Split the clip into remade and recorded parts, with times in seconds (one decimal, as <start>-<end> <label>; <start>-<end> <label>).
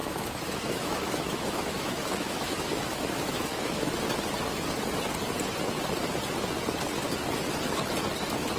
0.0-4.0 remade; 4.0-8.6 recorded